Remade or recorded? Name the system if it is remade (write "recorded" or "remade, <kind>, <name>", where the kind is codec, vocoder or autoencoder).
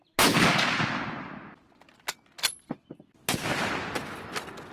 recorded